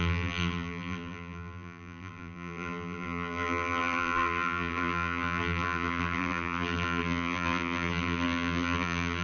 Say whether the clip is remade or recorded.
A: remade